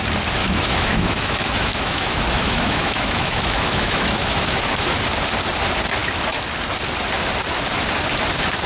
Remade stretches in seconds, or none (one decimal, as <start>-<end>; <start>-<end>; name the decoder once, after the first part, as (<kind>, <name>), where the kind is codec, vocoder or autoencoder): 0.4-5.0 (autoencoder, DAC-VAE)